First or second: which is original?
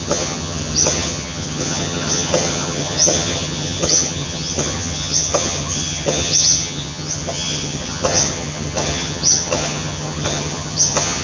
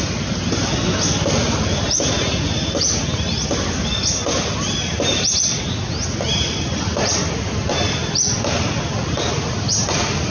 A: second